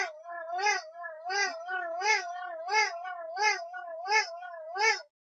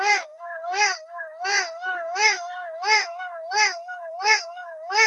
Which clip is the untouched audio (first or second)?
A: first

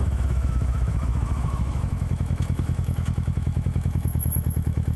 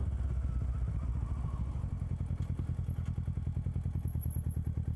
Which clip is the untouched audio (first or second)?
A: second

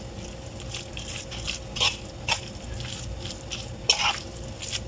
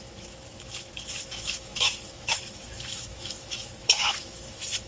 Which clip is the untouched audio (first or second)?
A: first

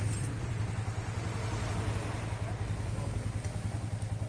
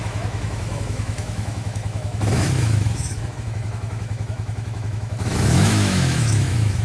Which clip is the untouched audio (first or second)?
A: first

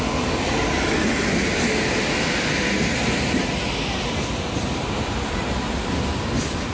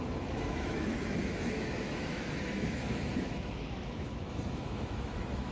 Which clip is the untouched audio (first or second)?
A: first